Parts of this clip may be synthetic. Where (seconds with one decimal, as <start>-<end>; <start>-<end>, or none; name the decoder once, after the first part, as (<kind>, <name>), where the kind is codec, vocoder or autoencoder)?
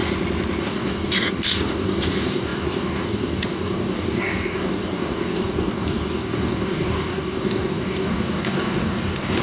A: 0.6-9.4 (codec, DAC)